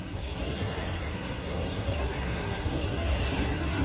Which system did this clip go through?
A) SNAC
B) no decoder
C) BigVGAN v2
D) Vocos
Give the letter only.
A